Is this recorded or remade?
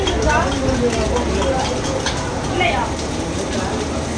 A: recorded